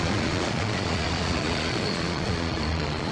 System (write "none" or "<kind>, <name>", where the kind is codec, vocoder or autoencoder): vocoder, Vocos